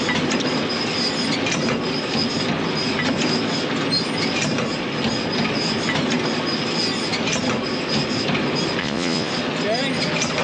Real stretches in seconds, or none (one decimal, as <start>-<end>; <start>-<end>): 0.0-8.8; 9.3-10.4